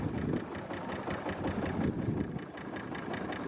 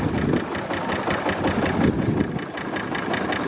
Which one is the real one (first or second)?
second